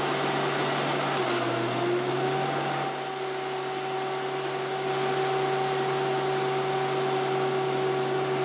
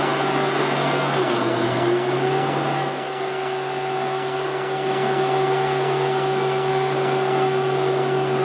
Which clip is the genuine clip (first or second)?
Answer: first